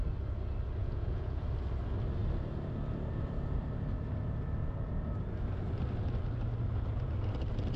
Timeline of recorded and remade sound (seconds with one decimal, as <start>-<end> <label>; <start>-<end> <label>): 0.0-0.8 recorded; 0.8-1.4 remade; 1.4-7.8 recorded